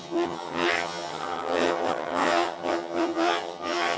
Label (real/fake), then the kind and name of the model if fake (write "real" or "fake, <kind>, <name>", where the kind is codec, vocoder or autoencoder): fake, vocoder, HiFi-GAN